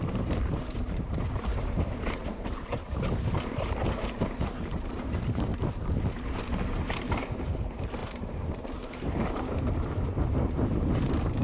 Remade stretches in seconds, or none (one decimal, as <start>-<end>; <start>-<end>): 0.0-11.4